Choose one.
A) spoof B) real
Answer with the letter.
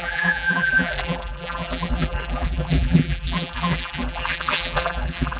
A